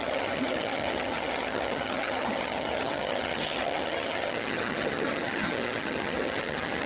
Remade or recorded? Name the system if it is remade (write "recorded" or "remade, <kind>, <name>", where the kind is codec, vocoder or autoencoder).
remade, vocoder, HiFi-GAN